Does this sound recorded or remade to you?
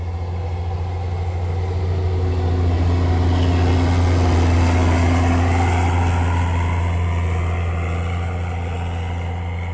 recorded